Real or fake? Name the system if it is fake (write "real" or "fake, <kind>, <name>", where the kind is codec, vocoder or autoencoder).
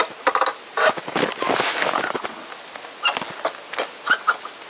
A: real